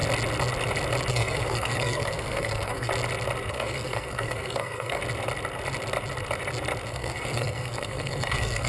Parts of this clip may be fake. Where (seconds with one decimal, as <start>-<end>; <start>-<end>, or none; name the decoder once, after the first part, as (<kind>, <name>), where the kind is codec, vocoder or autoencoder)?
1.1-2.9 (codec, SNAC); 3.5-5.0; 6.9-8.7